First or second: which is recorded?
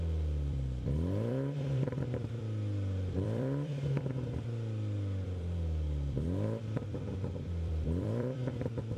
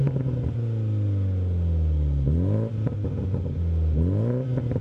second